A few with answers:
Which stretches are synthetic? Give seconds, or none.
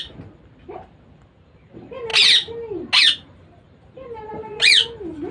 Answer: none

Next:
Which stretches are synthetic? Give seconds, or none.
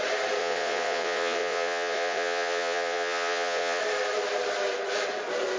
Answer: 0.4-3.8 (vocoder, Vocos)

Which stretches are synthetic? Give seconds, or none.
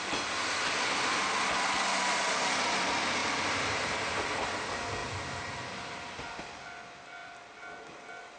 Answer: 3.2-4.5 (vocoder, BigVGAN v2)